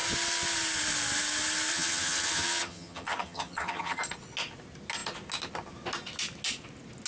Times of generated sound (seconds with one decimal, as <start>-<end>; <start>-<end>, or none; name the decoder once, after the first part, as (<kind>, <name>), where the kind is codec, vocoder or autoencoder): 1.7-4.0 (vocoder, HiFi-GAN)